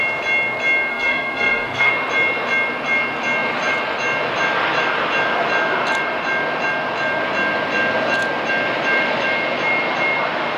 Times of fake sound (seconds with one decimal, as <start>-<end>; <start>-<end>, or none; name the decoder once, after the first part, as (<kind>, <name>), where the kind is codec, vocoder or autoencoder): 0.9-1.9 (codec, SNAC)